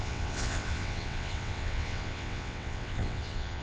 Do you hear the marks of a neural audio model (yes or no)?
yes